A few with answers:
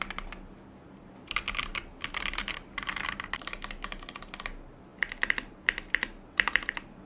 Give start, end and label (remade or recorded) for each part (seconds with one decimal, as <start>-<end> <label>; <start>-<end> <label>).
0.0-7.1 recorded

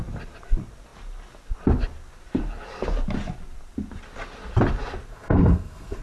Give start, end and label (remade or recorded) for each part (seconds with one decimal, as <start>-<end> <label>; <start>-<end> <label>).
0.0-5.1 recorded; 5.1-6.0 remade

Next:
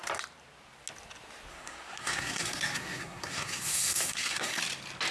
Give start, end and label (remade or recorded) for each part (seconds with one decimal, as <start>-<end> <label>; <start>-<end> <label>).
0.0-1.5 recorded; 1.5-4.6 remade; 4.6-5.1 recorded